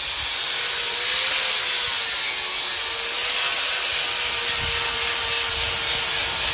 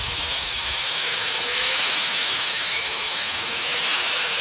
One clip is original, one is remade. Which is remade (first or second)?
second